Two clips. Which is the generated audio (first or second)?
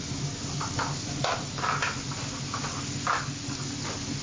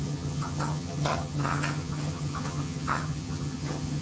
second